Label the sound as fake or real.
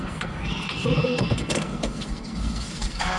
fake